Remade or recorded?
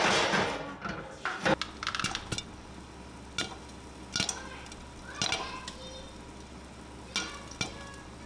recorded